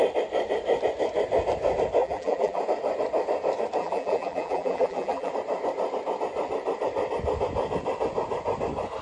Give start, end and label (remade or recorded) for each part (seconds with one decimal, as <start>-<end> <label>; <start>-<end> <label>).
0.0-2.0 recorded; 2.0-2.6 remade; 2.6-3.8 recorded; 3.8-5.3 remade; 5.3-9.0 recorded